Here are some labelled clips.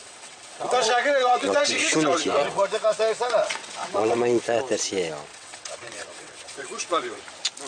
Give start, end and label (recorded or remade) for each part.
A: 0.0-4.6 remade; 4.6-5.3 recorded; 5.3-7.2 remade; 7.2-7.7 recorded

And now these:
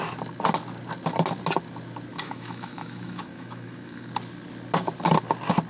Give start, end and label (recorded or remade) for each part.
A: 0.0-2.1 recorded; 2.1-4.1 remade; 4.1-5.7 recorded

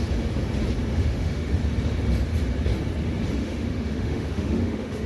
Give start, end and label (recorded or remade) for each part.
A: 0.0-0.9 recorded; 0.9-1.5 remade; 1.5-3.4 recorded; 3.4-5.1 remade

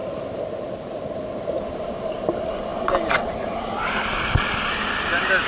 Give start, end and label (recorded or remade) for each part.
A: 0.0-5.5 recorded

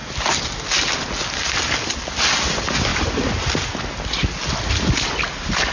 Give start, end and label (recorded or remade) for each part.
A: 0.0-5.7 recorded

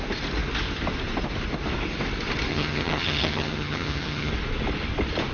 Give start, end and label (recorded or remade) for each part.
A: 0.0-2.5 recorded; 2.5-4.3 remade; 4.3-5.3 recorded

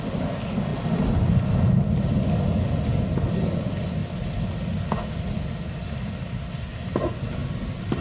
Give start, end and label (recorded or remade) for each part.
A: 0.0-8.0 recorded